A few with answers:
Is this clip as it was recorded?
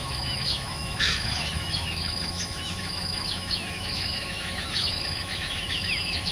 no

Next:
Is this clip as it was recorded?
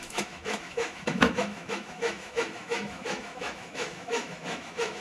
no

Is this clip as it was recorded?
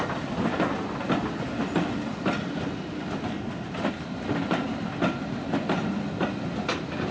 yes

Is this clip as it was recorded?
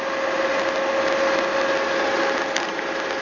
yes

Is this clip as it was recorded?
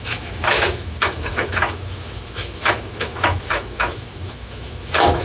no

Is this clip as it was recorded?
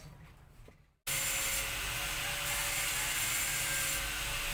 yes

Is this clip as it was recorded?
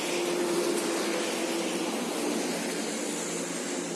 yes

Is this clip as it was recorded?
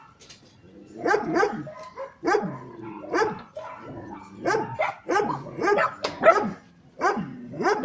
yes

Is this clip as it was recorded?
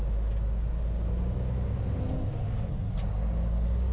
yes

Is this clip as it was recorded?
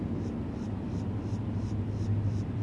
yes